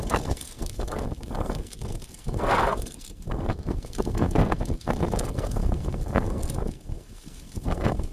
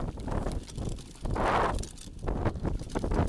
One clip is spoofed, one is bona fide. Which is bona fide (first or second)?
second